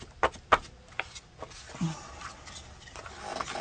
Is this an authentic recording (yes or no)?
yes